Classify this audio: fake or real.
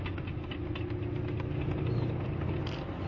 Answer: real